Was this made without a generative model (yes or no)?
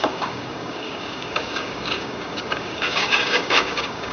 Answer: no